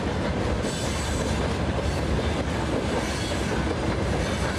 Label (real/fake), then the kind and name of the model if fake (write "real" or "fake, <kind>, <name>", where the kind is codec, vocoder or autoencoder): real